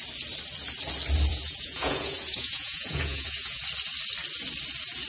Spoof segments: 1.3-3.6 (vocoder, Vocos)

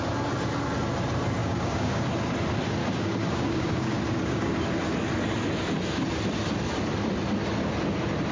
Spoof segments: 1.4-2.1 (codec, DAC); 2.8-4.6

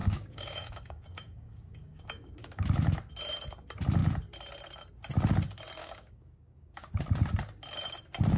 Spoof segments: 0.0-2.7 (codec, DAC); 5.8-6.9

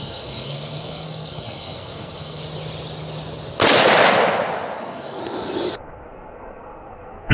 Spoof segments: 0.0-2.4 (codec, SNAC); 4.8-5.2; 5.8-7.3

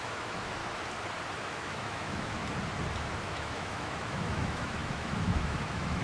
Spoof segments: 0.0-0.6 (autoencoder, DAC-VAE); 1.4-2.4; 3.2-6.0

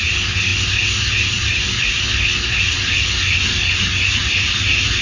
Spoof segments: none